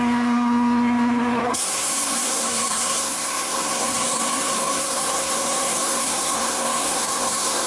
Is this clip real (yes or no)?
no